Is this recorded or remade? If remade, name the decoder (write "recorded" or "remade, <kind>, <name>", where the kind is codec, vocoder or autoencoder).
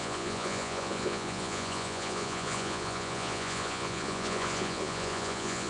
remade, vocoder, Vocos